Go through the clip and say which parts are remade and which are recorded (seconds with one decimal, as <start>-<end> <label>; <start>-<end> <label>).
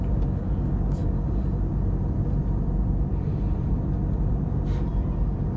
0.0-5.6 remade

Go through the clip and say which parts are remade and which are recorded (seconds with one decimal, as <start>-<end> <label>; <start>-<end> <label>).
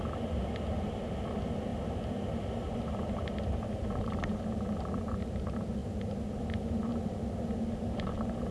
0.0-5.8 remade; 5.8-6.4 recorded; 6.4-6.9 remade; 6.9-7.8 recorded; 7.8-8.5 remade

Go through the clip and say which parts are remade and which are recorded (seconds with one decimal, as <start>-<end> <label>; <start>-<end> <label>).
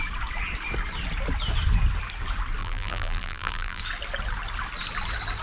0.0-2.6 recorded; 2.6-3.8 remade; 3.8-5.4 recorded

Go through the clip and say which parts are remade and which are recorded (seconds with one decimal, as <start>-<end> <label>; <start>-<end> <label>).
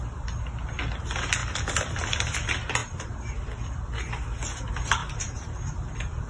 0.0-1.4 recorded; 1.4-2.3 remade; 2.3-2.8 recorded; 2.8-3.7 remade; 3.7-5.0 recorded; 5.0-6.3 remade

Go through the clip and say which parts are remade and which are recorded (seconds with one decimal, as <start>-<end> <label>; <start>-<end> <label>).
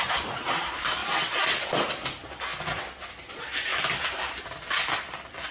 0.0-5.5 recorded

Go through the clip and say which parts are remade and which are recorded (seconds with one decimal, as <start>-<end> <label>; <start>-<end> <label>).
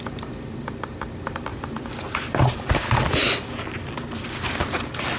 0.0-5.2 recorded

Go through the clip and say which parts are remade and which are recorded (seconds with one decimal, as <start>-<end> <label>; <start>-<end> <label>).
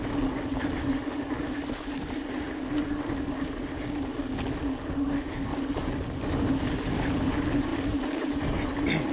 0.0-7.7 recorded; 7.7-8.4 remade; 8.4-9.1 recorded